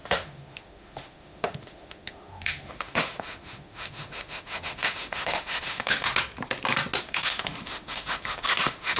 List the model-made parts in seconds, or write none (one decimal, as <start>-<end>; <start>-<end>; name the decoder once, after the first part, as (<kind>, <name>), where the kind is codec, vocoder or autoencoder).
0.0-6.1 (autoencoder, DAC-VAE); 7.0-9.0